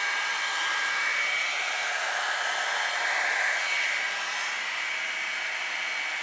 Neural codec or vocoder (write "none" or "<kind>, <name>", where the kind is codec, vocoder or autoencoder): none